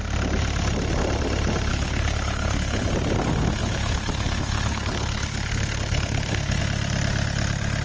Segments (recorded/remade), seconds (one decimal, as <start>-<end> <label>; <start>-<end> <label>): 0.0-1.7 recorded; 1.7-2.9 remade; 2.9-3.6 recorded; 3.6-6.6 remade; 6.6-7.8 recorded